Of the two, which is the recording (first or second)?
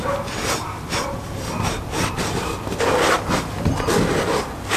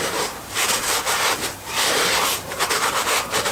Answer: first